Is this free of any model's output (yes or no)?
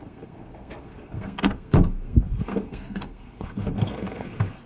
no